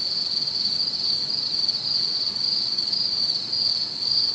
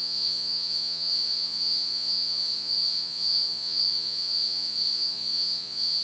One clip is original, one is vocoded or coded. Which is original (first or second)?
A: first